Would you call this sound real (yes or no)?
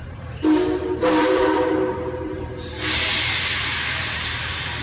no